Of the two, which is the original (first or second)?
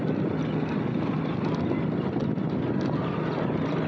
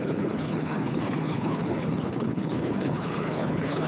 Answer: first